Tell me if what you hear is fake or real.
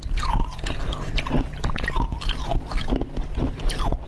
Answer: real